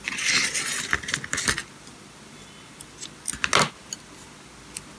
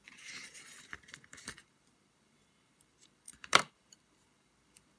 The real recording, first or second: first